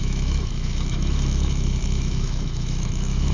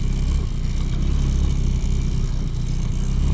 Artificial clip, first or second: first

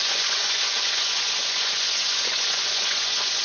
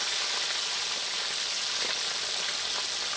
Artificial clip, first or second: first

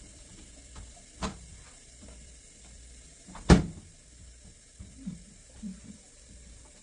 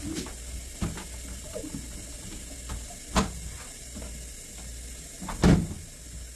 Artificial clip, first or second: first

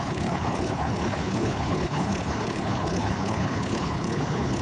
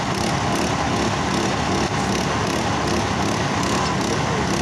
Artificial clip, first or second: first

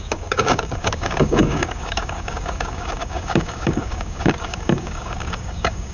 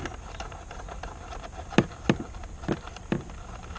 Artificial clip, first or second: first